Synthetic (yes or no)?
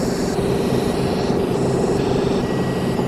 no